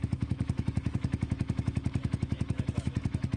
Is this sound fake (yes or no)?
yes